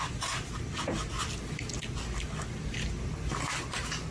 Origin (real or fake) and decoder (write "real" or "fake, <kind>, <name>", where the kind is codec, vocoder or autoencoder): real